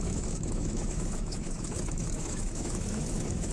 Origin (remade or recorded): remade